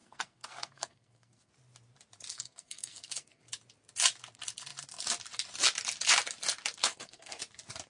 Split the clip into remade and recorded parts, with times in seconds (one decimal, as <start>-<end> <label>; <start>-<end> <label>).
0.0-1.5 remade; 1.5-2.3 recorded; 2.3-3.4 remade; 3.4-6.8 recorded; 6.8-7.4 remade; 7.4-7.9 recorded